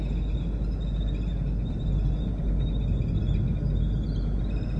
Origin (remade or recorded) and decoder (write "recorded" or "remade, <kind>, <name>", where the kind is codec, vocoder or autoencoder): recorded